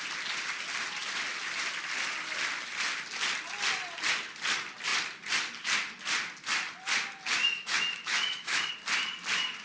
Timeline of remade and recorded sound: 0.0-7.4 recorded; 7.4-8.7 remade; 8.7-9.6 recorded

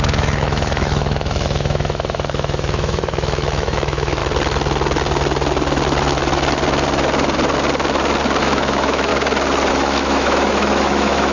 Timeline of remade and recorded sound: 0.0-4.2 remade; 4.2-8.4 recorded; 8.4-9.1 remade; 9.1-9.7 recorded; 9.7-11.3 remade

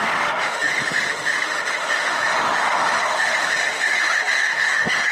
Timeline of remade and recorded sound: 0.0-5.1 remade

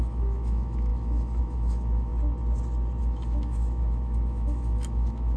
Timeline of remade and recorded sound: 0.0-2.1 remade; 2.1-3.0 recorded; 3.0-5.4 remade

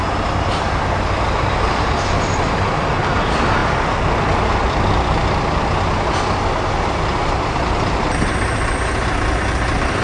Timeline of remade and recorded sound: 0.0-10.0 recorded

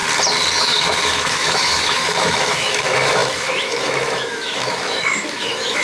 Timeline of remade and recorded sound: 0.0-0.6 recorded; 0.6-5.8 remade